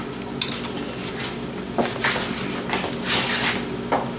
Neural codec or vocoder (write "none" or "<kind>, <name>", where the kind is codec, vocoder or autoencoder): none